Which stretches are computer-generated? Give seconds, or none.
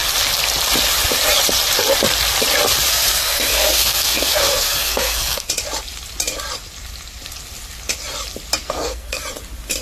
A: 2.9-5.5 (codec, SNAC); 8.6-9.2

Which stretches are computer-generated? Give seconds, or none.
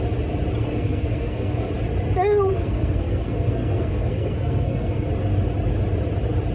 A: 0.6-1.7 (codec, SNAC); 2.5-5.1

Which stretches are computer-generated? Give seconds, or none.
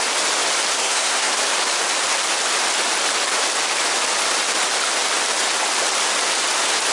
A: 0.8-1.3 (codec, SNAC)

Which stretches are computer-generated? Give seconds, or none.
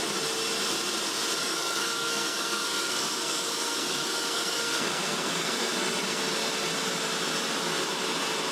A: 1.4-6.2 (codec, SNAC)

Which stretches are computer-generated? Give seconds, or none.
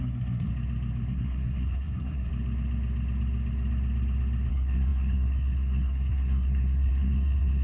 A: 0.0-0.5 (codec, SNAC); 1.1-2.3; 4.5-7.6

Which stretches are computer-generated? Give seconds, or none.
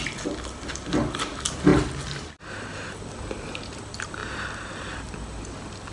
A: none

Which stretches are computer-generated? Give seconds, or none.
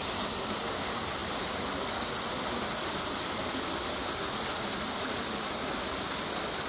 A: none